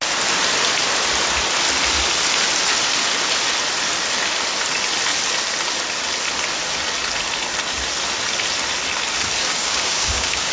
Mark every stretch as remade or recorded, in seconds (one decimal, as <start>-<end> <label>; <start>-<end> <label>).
0.0-9.4 recorded; 9.4-10.5 remade